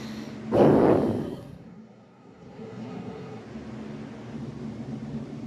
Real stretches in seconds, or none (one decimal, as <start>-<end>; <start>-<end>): 0.0-1.2; 3.4-5.5